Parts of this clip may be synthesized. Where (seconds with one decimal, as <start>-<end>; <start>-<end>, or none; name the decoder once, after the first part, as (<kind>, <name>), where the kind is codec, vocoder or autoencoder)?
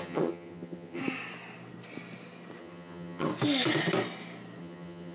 0.0-1.0 (vocoder, HiFi-GAN); 2.6-3.3; 4.6-5.1